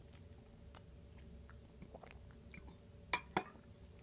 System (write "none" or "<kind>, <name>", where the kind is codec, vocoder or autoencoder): none